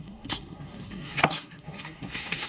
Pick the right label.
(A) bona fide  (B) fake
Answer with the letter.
B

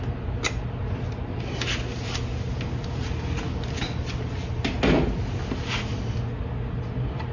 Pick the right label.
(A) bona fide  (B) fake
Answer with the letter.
A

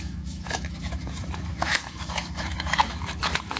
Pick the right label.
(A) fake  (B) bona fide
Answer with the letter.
A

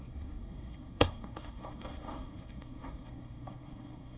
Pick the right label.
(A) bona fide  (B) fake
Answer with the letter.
B